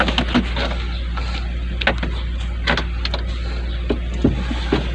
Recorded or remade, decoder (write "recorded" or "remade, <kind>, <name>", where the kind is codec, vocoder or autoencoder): recorded